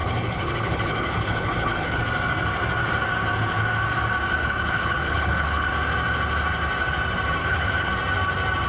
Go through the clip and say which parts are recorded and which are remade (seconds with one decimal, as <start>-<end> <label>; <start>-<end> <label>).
0.0-2.0 remade; 2.0-4.4 recorded; 4.4-5.7 remade; 5.7-7.4 recorded; 7.4-7.9 remade; 7.9-8.7 recorded